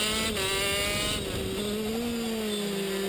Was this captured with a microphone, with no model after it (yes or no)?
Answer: yes